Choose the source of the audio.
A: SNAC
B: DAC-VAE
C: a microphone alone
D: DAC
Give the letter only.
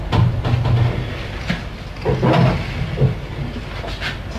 C